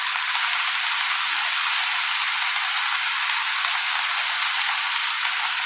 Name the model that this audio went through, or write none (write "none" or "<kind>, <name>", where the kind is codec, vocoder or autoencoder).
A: none